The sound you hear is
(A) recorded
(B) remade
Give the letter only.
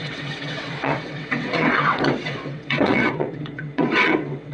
B